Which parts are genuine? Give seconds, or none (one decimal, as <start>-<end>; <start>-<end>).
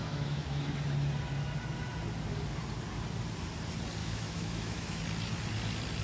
0.7-4.0; 5.0-6.0